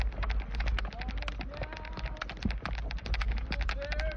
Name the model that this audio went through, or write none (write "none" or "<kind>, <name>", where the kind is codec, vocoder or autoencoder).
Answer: none